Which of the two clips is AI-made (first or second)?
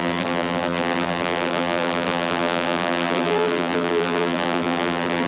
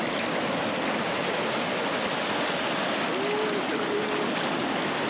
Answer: first